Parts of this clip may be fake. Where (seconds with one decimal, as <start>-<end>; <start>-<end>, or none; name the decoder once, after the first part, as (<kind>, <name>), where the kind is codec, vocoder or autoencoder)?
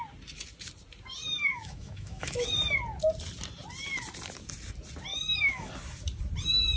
1.5-2.5 (autoencoder, DAC-VAE); 5.1-5.7